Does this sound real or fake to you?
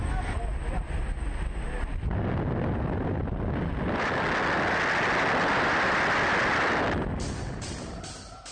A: real